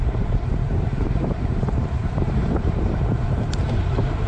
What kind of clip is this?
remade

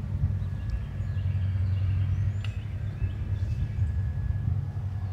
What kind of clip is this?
recorded